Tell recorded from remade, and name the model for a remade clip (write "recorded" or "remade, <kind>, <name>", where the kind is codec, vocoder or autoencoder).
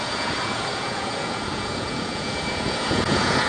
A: remade, vocoder, Vocos